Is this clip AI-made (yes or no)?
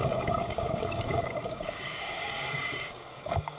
yes